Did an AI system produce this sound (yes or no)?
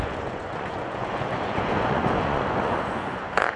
yes